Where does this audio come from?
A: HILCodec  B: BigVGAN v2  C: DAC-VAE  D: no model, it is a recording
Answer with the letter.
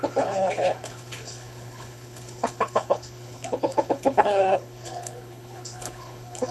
A